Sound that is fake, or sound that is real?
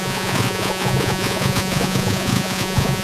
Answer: fake